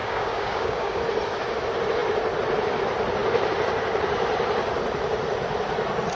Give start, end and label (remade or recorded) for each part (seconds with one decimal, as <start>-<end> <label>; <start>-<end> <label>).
0.0-1.0 remade; 1.0-6.1 recorded